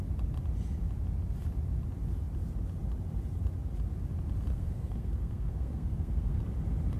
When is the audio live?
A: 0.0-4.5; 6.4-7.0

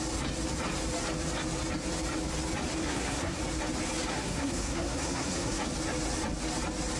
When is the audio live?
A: 0.0-2.8; 3.4-4.1; 5.6-7.0

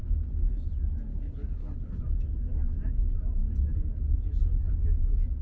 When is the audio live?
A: 0.0-1.1; 2.0-5.4